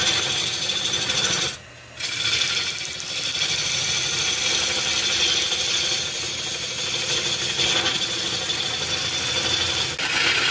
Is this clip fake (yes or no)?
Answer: no